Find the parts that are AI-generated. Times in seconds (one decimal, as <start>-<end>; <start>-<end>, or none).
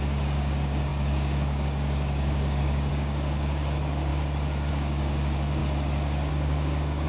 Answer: 0.0-4.1; 4.7-5.6; 6.3-7.1